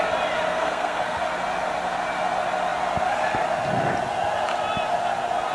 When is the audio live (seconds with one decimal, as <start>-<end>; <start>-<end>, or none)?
0.0-0.5; 1.2-5.5